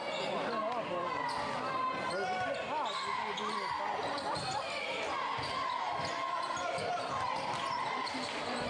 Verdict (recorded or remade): recorded